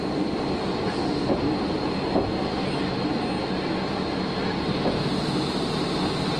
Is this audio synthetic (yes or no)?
no